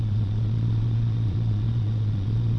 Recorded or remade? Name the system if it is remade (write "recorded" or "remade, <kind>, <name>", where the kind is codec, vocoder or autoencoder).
remade, vocoder, Vocos